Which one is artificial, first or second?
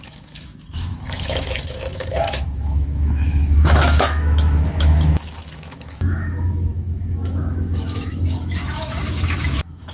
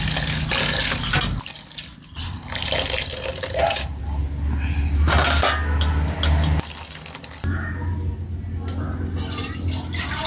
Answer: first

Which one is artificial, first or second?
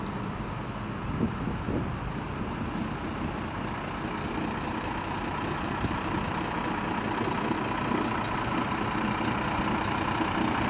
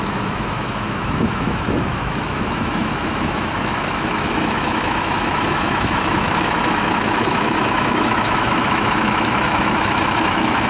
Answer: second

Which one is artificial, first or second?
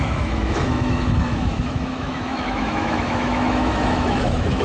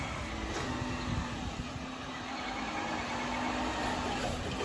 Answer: first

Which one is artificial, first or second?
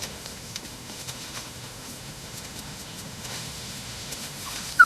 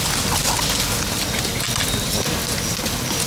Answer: first